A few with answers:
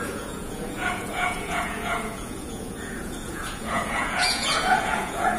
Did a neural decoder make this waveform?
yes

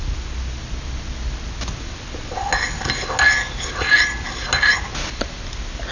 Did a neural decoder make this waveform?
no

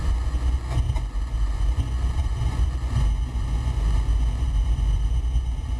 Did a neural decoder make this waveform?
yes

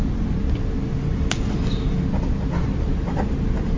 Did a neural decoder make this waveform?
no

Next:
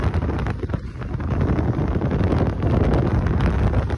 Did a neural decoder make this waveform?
no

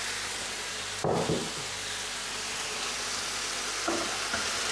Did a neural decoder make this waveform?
no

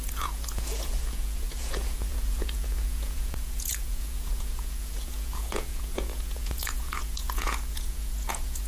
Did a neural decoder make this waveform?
yes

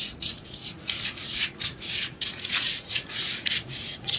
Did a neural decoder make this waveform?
yes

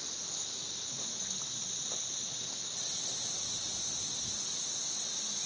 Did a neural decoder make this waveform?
no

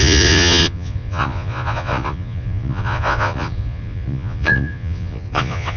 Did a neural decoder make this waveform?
yes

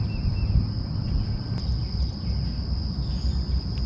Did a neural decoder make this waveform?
no